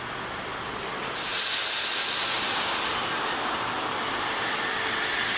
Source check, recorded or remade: recorded